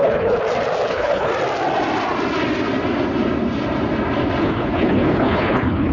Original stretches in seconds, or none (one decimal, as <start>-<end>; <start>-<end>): 0.4-0.9; 1.3-4.4